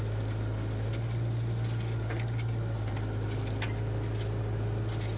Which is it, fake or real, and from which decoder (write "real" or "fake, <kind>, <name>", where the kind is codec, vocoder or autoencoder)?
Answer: real